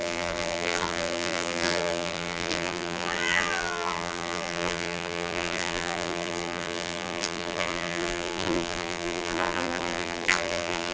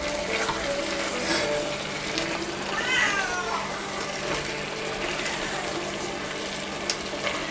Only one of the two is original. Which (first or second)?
second